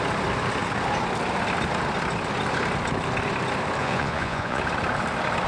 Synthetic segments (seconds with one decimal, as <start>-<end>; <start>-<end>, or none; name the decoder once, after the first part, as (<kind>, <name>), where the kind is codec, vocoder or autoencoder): 3.8-4.6 (vocoder, Vocos)